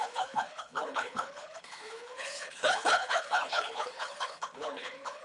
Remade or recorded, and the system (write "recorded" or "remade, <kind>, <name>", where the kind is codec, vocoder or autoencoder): remade, codec, HILCodec